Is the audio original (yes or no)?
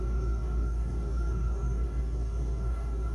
no